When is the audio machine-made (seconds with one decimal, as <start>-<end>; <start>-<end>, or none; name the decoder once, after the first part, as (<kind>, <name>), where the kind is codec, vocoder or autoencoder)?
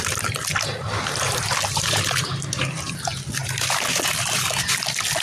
0.5-2.6 (vocoder, BigVGAN v2); 3.4-4.5